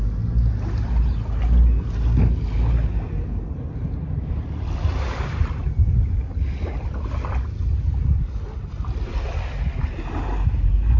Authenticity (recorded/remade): recorded